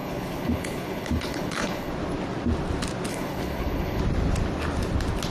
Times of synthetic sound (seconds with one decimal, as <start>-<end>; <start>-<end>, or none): 0.0-1.9; 3.1-4.0